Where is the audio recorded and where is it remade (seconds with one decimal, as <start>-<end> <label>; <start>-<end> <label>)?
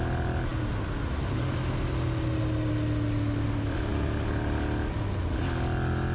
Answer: 0.0-6.1 recorded